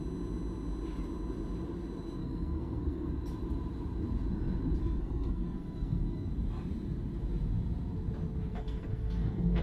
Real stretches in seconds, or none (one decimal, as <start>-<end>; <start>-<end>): 0.0-2.2; 3.1-4.8; 6.3-8.5